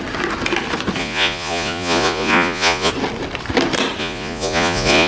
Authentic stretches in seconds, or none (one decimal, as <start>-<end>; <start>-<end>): 0.0-1.0; 2.9-4.0